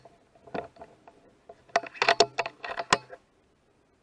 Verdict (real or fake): real